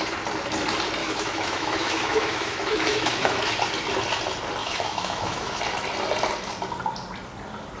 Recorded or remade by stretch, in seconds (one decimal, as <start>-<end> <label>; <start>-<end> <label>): 0.0-1.0 recorded; 1.0-3.5 remade; 3.5-4.6 recorded; 4.6-5.6 remade; 5.6-7.8 recorded